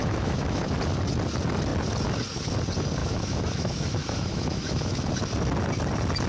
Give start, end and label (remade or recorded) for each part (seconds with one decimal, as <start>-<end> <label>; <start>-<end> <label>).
0.0-0.6 remade; 0.6-3.0 recorded; 3.0-5.1 remade; 5.1-6.3 recorded